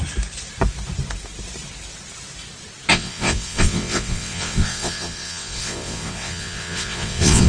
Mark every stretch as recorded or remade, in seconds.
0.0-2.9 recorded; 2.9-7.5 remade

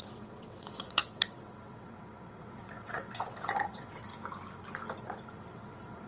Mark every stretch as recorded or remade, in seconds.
0.0-4.1 remade; 4.1-5.0 recorded; 5.0-6.1 remade

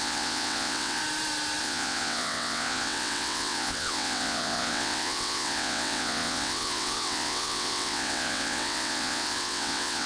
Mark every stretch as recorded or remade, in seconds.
0.0-1.0 remade; 1.0-1.6 recorded; 1.6-10.1 remade

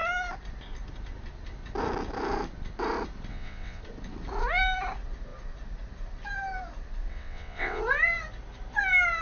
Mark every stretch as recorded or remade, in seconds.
0.0-3.3 recorded; 3.3-3.8 remade; 3.8-7.1 recorded; 7.1-7.8 remade; 7.8-9.2 recorded

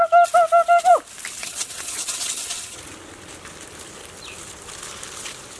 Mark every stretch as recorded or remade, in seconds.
0.0-1.4 recorded; 1.4-2.8 remade; 2.8-5.6 recorded

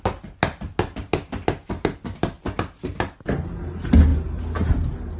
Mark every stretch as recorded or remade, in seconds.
0.0-5.2 recorded